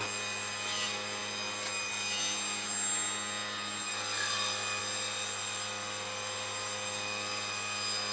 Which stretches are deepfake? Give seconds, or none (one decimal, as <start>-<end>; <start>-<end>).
none